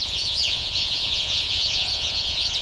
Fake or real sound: fake